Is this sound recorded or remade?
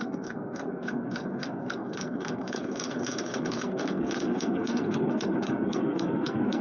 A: remade